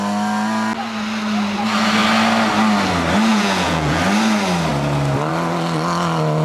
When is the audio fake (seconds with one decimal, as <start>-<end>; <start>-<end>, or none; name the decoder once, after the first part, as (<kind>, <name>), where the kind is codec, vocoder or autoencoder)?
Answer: 3.3-4.0 (vocoder, Vocos)